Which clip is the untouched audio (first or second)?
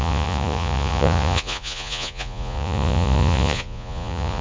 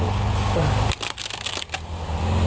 second